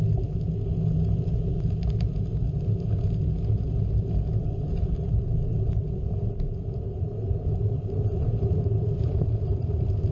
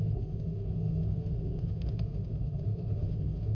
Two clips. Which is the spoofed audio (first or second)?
second